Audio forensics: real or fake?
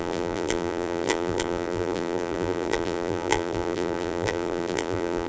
fake